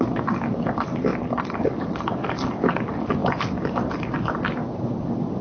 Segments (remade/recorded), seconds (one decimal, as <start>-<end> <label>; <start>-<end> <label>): 0.0-5.4 recorded